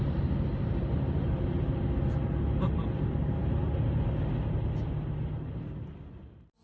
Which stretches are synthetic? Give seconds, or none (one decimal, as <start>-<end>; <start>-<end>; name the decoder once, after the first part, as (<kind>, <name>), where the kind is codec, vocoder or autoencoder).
none

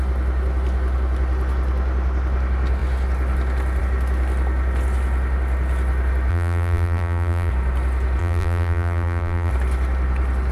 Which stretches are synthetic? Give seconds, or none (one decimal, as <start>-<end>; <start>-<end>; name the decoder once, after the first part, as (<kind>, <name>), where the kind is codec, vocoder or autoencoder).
6.3-7.5 (vocoder, BigVGAN v2); 8.2-9.5